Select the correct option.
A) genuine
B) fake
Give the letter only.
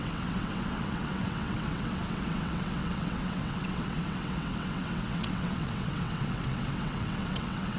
B